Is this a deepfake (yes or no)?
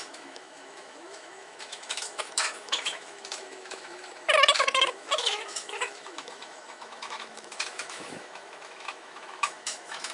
yes